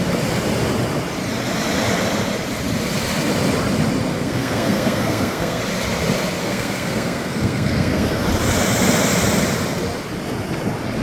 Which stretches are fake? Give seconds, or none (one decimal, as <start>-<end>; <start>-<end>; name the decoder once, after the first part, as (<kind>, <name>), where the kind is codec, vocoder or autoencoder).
4.1-5.6 (codec, SNAC); 6.4-8.2